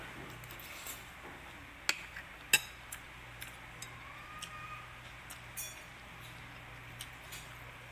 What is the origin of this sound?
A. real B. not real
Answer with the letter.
A